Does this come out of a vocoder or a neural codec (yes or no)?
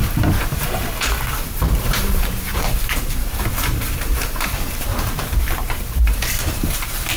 yes